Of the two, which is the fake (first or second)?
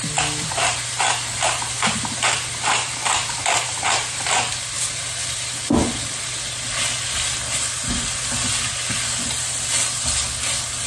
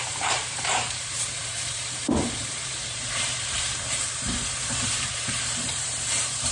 second